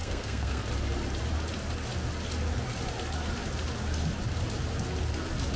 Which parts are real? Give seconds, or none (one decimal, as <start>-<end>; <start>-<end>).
0.6-5.6